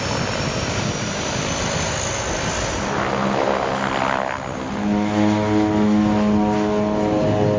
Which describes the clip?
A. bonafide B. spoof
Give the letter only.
A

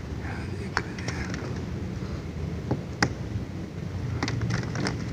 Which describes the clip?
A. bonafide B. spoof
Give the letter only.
A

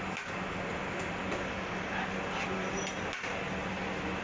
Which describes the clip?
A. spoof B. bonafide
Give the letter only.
B